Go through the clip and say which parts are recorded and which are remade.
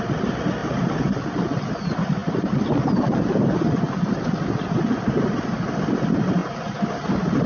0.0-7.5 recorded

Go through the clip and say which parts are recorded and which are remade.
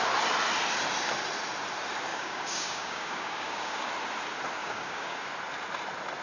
0.0-2.1 recorded; 2.1-3.9 remade; 3.9-4.6 recorded; 4.6-5.3 remade; 5.3-6.2 recorded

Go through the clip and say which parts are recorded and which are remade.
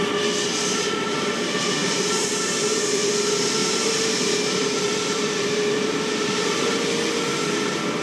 0.0-1.8 recorded; 1.8-3.1 remade; 3.1-3.6 recorded; 3.6-6.9 remade; 6.9-8.0 recorded